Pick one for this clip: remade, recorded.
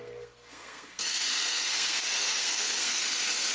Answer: remade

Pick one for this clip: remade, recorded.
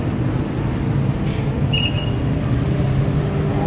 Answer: recorded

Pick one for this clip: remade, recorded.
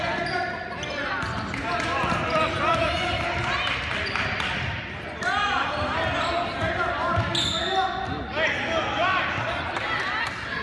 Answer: recorded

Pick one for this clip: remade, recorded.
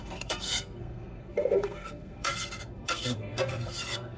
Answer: remade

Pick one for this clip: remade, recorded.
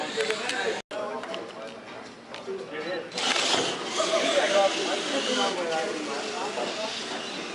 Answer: recorded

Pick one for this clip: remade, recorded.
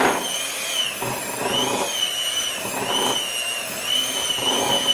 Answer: recorded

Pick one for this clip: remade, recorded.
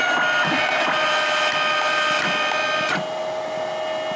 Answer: recorded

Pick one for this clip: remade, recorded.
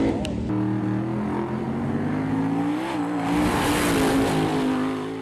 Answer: recorded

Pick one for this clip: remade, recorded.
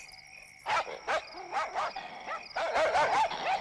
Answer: recorded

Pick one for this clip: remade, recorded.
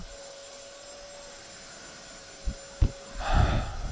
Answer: recorded